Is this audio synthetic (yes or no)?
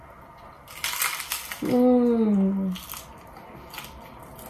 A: no